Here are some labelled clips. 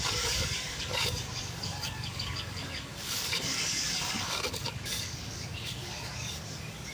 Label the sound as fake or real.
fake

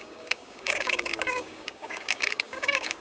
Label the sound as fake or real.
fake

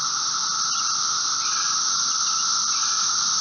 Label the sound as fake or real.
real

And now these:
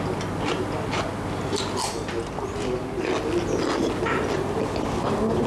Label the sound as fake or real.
real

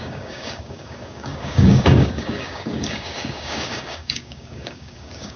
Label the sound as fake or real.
fake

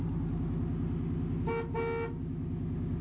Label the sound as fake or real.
real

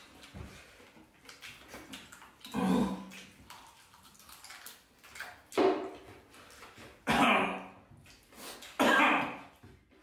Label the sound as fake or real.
real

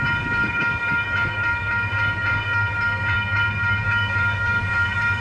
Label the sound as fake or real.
fake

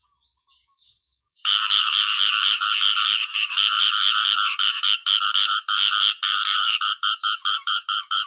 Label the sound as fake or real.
fake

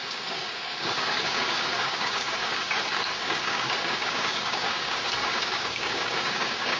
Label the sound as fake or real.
fake